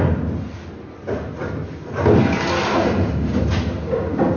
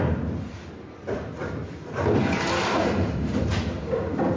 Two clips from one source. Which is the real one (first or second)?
first